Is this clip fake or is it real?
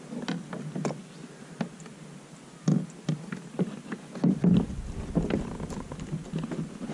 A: real